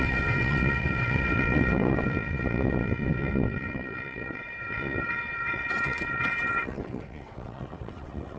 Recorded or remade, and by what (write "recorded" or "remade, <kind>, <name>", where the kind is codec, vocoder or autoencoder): remade, vocoder, WaveNeXt